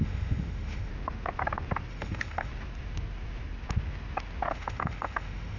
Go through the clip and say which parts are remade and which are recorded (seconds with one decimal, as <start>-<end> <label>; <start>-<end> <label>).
0.0-0.9 remade; 0.9-1.9 recorded; 1.9-2.5 remade; 2.5-4.5 recorded; 4.5-5.6 remade